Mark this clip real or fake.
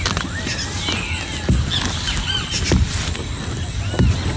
real